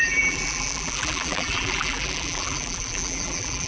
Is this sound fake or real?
fake